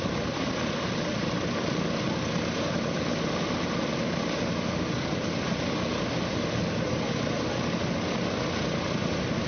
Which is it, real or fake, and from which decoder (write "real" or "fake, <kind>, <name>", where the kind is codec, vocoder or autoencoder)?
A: real